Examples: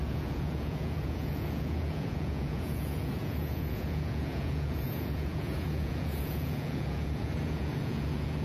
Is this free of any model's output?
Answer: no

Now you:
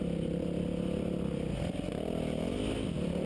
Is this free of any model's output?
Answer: yes